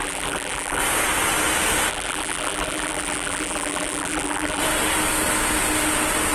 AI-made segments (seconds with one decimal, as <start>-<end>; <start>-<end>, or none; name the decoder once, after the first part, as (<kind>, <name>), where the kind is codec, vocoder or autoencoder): 0.0-0.8 (vocoder, BigVGAN v2); 1.9-4.6